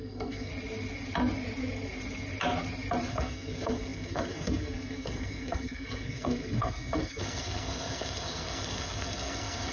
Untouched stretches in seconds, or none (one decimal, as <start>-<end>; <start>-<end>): 0.5-3.1